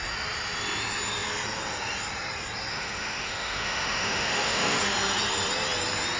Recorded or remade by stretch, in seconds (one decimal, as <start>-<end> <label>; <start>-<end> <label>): 0.0-2.7 recorded; 2.7-4.8 remade; 4.8-6.2 recorded

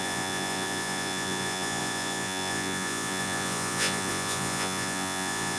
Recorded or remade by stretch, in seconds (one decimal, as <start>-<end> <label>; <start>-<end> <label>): 0.0-5.6 remade